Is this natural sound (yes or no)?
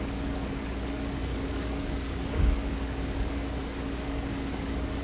no